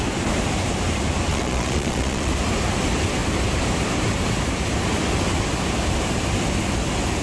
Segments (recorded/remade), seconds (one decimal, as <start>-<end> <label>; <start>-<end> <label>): 0.0-1.3 recorded; 1.3-2.3 remade; 2.3-7.2 recorded